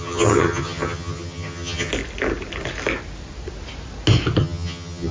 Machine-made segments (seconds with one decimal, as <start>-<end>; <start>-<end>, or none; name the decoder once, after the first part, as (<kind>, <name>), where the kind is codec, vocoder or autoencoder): 0.0-1.9 (vocoder, HiFi-GAN); 4.4-5.1